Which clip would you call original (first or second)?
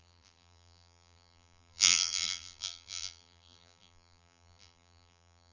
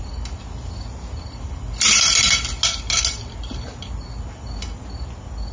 second